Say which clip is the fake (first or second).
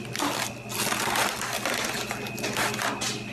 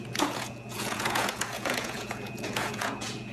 second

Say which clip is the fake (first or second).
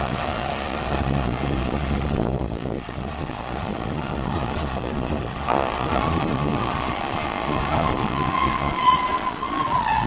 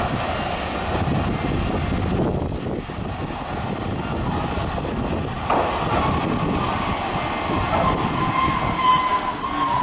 first